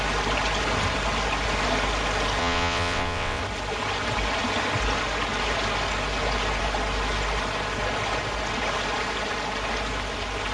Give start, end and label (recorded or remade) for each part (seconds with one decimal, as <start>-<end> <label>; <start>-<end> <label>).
0.0-2.4 recorded; 2.4-3.4 remade; 3.4-10.5 recorded